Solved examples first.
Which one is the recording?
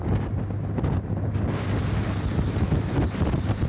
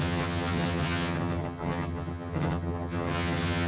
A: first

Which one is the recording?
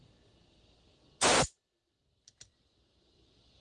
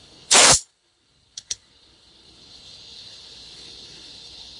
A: first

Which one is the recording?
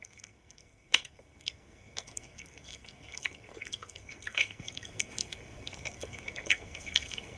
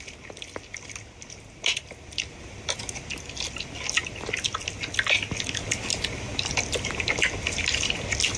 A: second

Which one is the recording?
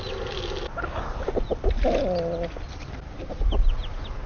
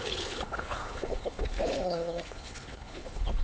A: first